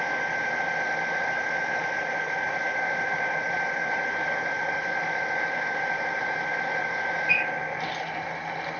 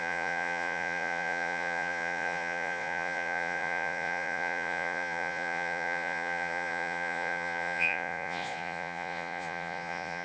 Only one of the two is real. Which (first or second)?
first